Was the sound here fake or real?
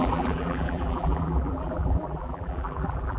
fake